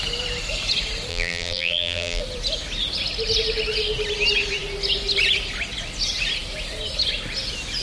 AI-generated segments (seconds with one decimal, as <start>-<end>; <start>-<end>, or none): 1.1-2.2